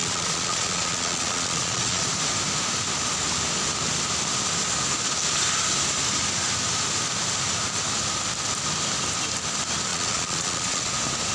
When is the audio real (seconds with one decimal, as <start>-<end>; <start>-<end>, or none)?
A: 2.1-9.9; 10.9-11.3